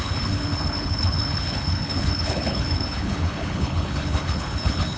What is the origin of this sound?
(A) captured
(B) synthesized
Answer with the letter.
B